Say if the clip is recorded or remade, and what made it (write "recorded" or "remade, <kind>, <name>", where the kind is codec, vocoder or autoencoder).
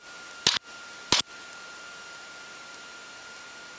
recorded